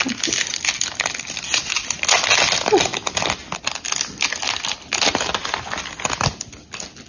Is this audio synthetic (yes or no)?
no